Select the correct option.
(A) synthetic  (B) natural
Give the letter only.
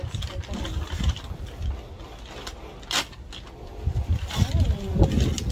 B